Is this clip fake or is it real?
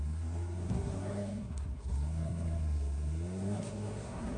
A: fake